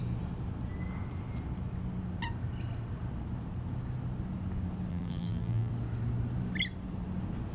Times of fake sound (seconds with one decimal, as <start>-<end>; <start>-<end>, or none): 4.9-5.7